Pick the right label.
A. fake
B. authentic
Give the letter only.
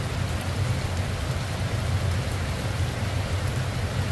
B